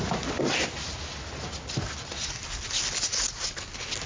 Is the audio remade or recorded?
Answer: recorded